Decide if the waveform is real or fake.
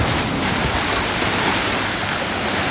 real